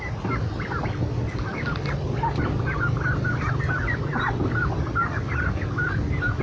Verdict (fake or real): real